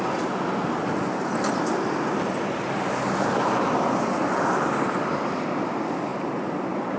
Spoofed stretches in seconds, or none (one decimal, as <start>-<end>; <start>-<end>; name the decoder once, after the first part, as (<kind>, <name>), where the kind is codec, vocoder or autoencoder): none

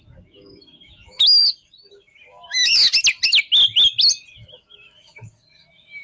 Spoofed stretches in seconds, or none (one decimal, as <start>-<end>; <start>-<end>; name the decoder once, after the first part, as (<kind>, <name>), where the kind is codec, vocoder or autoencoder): 0.0-1.4 (autoencoder, DAC-VAE); 1.9-2.8; 4.3-6.0

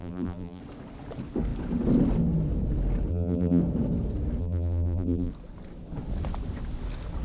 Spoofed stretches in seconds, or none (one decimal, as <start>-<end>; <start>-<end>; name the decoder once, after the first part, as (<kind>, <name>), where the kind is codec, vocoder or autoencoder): 0.0-0.6 (vocoder, BigVGAN v2); 3.1-3.6; 4.4-5.3

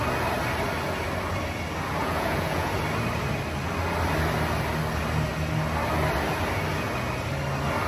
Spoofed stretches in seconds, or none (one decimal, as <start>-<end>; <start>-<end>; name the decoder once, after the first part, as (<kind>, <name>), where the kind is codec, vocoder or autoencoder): 2.0-2.7 (vocoder, Vocos)